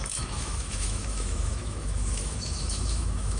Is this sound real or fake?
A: fake